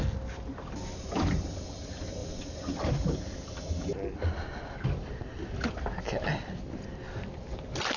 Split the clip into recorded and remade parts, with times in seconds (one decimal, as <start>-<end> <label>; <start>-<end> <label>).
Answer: 0.0-2.2 recorded; 2.2-6.0 remade; 6.0-8.0 recorded